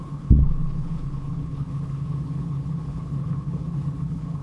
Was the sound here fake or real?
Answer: fake